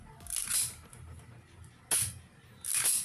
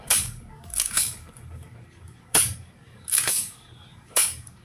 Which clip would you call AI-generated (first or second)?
second